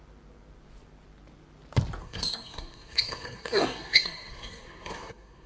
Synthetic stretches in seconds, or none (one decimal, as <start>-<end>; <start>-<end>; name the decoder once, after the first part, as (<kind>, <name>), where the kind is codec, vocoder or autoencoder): 2.0-5.5 (codec, SNAC)